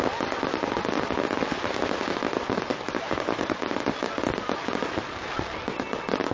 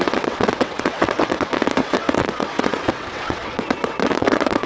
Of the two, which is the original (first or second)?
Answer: first